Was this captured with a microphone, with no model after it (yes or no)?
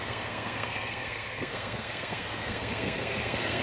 no